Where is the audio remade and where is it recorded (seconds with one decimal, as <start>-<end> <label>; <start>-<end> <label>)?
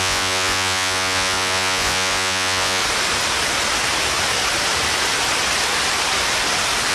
0.0-2.8 remade; 2.8-6.9 recorded